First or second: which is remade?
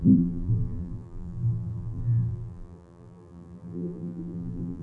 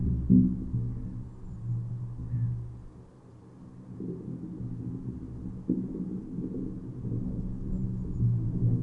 first